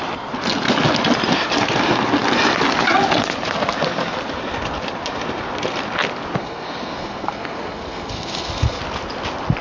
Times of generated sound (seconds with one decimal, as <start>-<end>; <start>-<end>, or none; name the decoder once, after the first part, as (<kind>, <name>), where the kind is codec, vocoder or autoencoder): 6.4-8.8 (codec, SNAC)